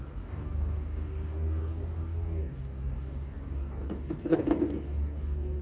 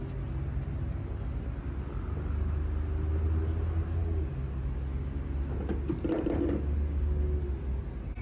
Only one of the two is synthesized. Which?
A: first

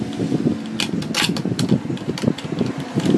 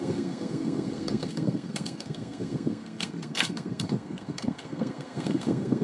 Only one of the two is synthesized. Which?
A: second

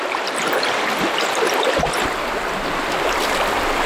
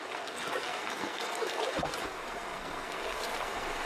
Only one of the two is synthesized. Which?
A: second